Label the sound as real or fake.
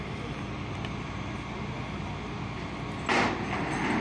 real